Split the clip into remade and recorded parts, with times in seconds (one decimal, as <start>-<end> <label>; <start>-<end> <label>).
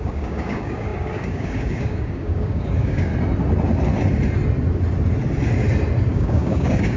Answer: 0.0-3.1 remade; 3.1-6.1 recorded; 6.1-7.0 remade